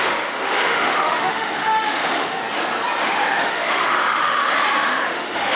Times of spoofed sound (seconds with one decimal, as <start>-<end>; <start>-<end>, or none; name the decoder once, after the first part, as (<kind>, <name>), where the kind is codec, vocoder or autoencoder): 0.0-2.4 (autoencoder, DAC-VAE); 3.0-5.6